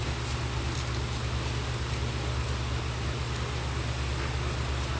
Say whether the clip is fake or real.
real